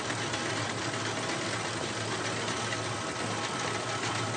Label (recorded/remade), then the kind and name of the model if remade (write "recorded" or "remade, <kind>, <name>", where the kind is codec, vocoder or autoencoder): recorded